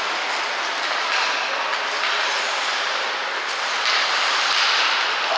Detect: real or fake real